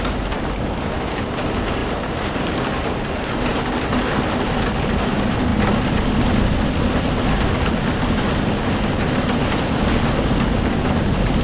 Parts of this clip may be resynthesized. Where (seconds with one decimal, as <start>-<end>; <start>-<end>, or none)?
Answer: none